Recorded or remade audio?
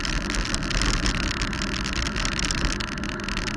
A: recorded